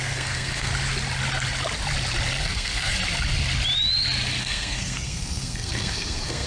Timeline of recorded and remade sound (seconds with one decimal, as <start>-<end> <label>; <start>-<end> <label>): 0.0-0.7 remade; 0.7-2.4 recorded; 2.4-2.9 remade; 2.9-4.4 recorded; 4.4-6.5 remade